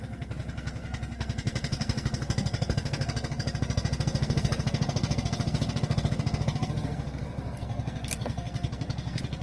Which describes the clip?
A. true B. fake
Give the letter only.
B